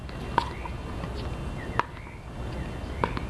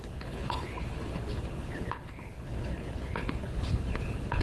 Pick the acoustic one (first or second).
first